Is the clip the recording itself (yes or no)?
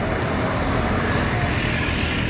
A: yes